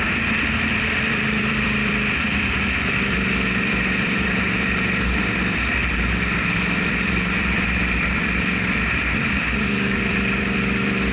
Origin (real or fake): fake